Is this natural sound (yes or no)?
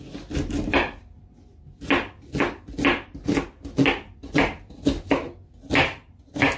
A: yes